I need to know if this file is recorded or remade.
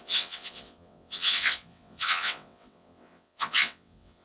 remade